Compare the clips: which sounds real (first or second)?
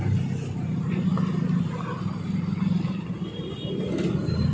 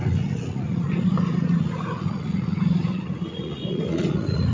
first